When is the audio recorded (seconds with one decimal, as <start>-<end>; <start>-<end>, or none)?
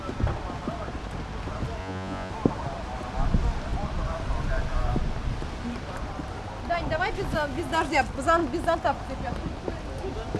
0.0-1.8; 2.3-10.4